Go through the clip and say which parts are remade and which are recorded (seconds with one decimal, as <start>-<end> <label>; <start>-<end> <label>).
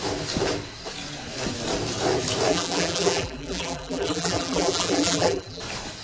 0.0-2.5 recorded; 2.5-5.6 remade; 5.6-6.0 recorded